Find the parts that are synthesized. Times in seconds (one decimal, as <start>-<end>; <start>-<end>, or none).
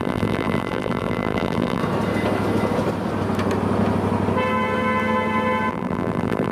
0.0-1.8; 5.7-6.5